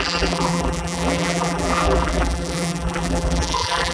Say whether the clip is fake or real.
fake